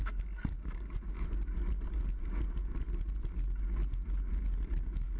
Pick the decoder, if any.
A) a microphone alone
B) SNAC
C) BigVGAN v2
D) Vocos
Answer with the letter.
A